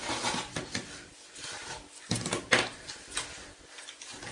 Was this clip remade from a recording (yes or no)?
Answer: no